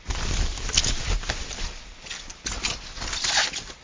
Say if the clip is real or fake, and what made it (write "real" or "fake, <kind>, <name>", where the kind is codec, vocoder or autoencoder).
real